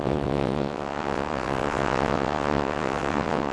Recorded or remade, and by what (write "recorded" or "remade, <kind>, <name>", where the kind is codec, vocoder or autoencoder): remade, vocoder, WaveNeXt